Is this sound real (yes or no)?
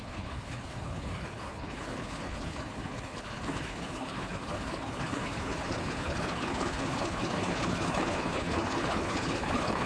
no